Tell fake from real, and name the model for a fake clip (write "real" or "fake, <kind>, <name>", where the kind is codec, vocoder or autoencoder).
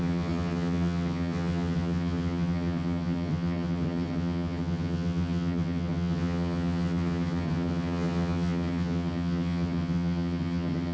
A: fake, vocoder, HiFi-GAN